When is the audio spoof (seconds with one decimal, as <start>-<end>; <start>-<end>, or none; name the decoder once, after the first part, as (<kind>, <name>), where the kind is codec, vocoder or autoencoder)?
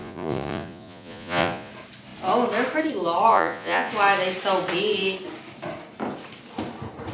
0.0-1.7 (vocoder, Vocos); 3.3-3.9